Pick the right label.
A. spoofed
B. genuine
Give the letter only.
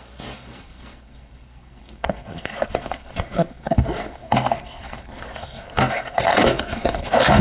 A